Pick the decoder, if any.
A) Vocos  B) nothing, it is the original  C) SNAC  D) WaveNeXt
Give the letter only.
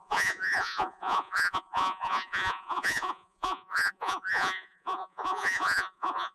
A